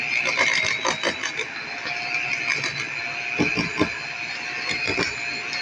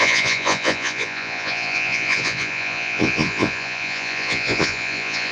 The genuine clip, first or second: first